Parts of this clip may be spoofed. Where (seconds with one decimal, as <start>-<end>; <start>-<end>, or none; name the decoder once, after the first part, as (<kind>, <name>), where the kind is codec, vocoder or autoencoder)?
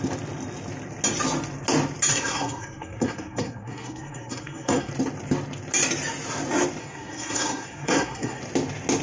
2.1-4.9 (codec, SNAC); 6.8-8.4